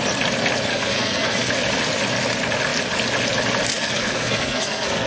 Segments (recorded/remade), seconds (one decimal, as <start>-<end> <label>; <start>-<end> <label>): 0.0-0.7 recorded; 0.7-1.5 remade; 1.5-3.7 recorded; 3.7-5.1 remade